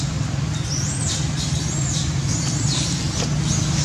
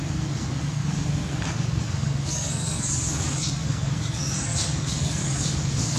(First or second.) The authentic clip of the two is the first